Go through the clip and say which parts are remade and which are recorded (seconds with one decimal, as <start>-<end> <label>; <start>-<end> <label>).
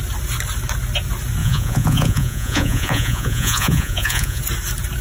0.0-1.4 recorded; 1.4-4.4 remade; 4.4-5.0 recorded